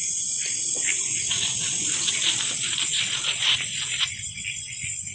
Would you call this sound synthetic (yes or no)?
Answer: no